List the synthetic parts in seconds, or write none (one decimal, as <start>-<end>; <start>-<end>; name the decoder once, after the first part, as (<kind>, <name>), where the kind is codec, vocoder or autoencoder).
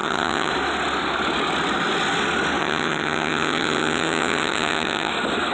0.0-0.5 (vocoder, HiFi-GAN); 2.6-5.1